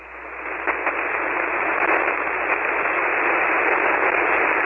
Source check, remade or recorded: recorded